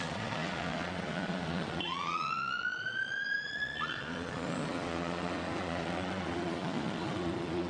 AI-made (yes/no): yes